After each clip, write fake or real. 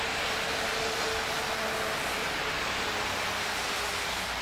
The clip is real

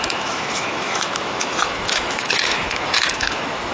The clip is fake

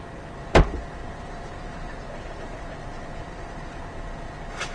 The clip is fake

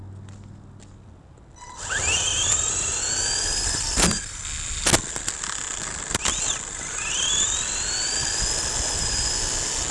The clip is real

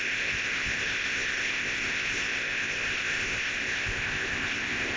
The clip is fake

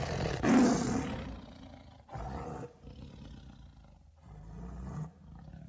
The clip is real